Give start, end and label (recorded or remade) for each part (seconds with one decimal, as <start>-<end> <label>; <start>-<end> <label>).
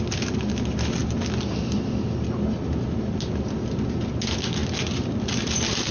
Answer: 0.0-4.6 recorded; 4.6-5.9 remade